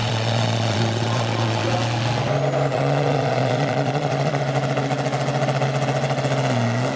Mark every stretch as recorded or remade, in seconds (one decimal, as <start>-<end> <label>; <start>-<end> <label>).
0.0-1.7 remade; 1.7-2.7 recorded; 2.7-4.4 remade; 4.4-7.0 recorded